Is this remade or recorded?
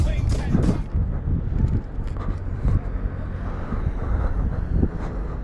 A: recorded